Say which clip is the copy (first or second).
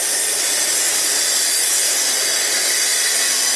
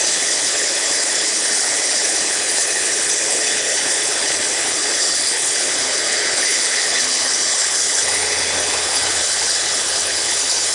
second